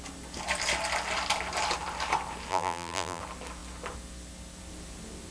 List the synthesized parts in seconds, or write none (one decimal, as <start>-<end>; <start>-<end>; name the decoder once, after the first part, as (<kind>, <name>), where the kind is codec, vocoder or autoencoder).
2.5-3.2 (vocoder, BigVGAN v2)